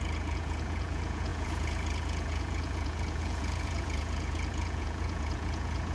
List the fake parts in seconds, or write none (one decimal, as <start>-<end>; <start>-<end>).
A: 0.0-5.9